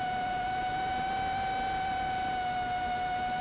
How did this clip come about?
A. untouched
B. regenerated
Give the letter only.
A